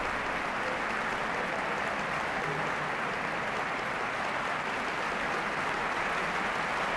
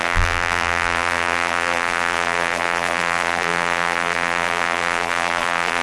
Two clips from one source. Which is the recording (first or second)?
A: first